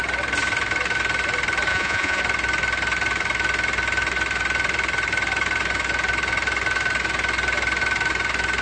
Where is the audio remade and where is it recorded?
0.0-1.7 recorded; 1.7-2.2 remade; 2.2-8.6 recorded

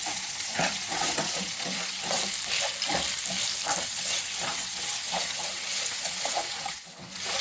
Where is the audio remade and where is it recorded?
0.0-2.2 remade; 2.2-3.8 recorded; 3.8-7.4 remade

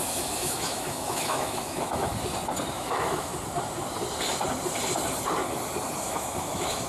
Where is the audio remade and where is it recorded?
0.0-2.1 remade; 2.1-2.7 recorded; 2.7-3.3 remade; 3.3-6.0 recorded; 6.0-6.9 remade